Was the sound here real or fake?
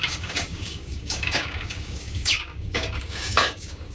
fake